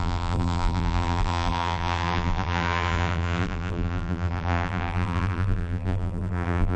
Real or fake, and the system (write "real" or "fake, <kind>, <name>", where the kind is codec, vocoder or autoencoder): fake, vocoder, BigVGAN v2